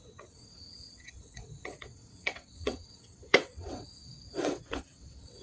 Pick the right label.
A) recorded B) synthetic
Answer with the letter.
B